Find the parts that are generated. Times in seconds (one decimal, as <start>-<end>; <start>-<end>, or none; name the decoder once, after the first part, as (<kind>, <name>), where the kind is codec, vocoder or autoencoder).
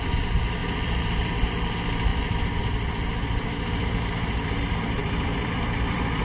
0.6-1.3 (vocoder, BigVGAN v2); 2.1-4.6; 5.0-6.2